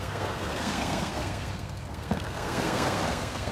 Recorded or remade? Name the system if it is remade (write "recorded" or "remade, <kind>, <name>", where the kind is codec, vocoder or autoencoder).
remade, codec, SNAC